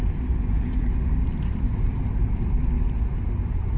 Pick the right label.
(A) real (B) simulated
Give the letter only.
B